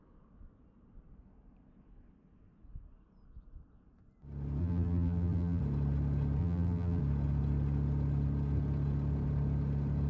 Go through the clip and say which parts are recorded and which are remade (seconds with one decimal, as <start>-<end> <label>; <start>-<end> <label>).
0.0-4.6 recorded; 4.6-5.6 remade; 5.6-6.4 recorded; 6.4-7.0 remade; 7.0-10.1 recorded